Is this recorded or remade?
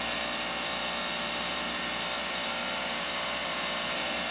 remade